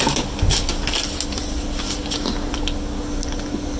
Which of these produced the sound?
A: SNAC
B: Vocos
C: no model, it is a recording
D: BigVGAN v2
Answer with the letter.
C